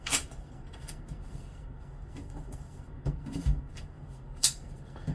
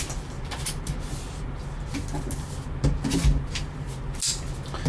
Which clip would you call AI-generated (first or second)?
first